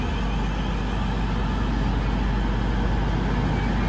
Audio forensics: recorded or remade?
recorded